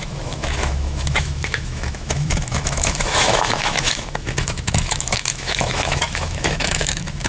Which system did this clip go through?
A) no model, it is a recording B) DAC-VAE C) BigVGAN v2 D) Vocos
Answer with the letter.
B